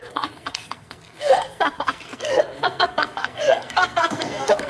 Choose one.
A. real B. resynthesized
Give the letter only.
B